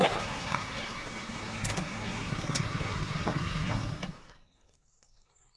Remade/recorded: remade